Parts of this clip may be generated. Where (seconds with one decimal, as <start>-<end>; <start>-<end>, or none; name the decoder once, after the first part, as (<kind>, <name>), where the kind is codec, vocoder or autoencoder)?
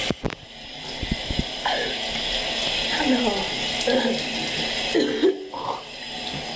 none